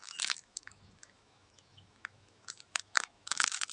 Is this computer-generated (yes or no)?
yes